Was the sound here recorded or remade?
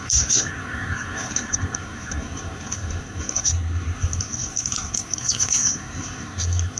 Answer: remade